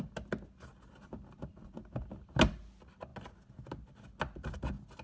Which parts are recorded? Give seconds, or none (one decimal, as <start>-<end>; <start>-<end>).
0.0-5.0